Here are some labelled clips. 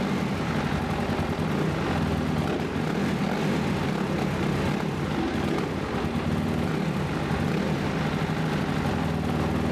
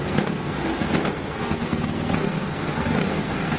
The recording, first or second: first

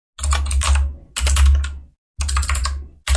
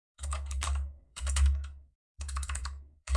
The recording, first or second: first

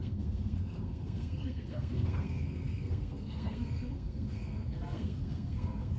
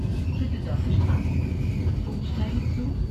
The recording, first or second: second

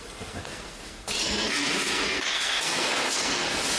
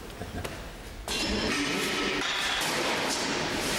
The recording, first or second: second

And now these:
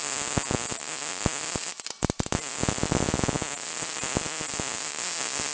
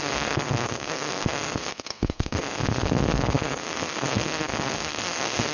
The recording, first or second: first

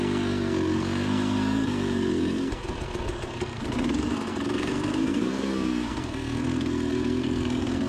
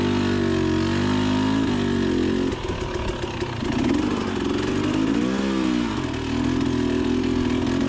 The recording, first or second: second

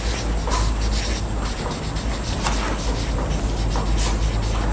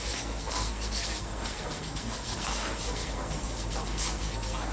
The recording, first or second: first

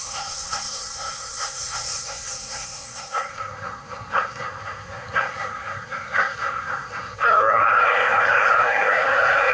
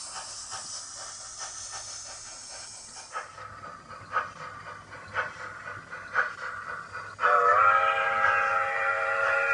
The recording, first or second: second